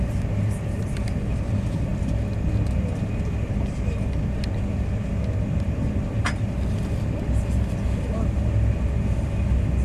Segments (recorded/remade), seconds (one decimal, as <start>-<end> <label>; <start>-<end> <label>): 0.0-9.8 recorded